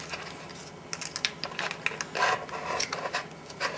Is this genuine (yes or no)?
yes